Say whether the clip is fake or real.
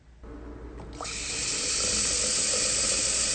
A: real